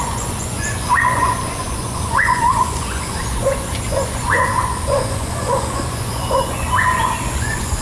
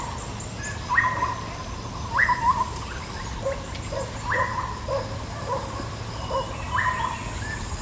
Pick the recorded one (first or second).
second